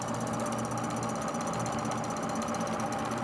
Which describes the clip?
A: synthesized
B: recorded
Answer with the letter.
B